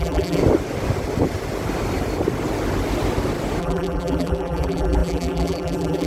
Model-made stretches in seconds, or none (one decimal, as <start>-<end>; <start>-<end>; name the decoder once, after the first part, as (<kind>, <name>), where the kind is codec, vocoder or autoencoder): 0.0-0.4 (vocoder, BigVGAN v2); 3.6-6.1